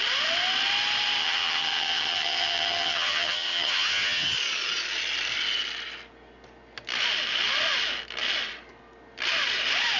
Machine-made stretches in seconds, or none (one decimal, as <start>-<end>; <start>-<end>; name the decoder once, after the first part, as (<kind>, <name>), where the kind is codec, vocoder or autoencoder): 1.2-4.3 (vocoder, HiFi-GAN)